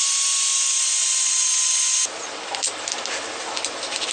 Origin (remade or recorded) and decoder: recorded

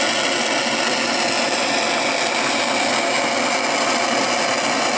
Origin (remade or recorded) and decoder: recorded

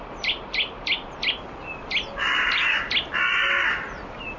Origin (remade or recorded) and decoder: recorded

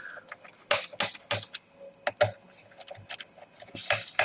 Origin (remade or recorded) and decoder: recorded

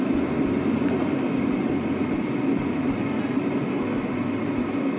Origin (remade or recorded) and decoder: recorded